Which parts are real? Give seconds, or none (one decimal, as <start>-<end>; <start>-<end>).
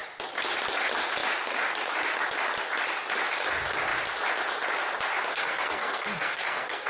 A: 0.0-5.3